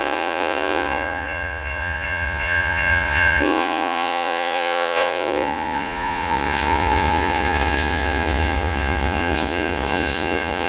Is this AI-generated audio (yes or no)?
yes